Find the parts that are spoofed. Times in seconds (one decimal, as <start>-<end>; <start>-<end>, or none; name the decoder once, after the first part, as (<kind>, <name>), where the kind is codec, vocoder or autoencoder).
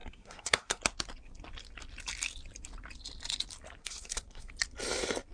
0.0-0.8 (codec, SNAC); 3.8-4.5